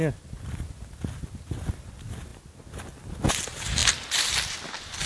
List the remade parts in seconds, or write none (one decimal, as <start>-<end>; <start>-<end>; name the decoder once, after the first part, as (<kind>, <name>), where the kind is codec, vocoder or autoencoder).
none